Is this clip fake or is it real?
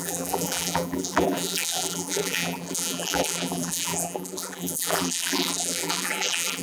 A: fake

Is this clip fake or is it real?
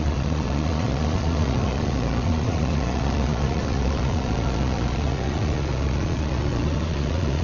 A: fake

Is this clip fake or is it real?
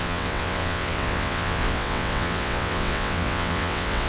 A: fake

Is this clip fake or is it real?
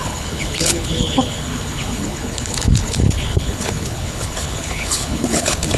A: fake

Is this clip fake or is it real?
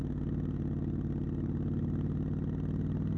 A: real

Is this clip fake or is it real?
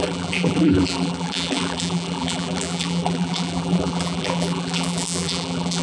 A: fake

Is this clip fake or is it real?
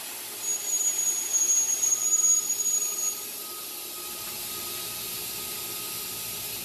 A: real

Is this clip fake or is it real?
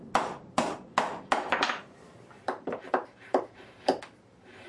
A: fake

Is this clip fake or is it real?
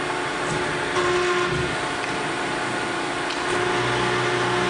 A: real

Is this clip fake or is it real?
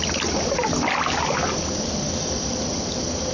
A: real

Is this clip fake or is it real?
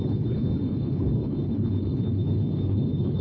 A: fake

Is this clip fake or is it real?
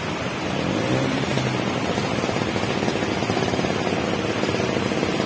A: real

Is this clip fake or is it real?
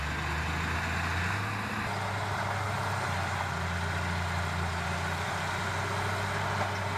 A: real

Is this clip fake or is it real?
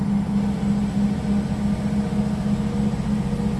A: real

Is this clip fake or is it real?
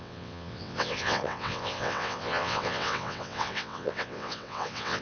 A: fake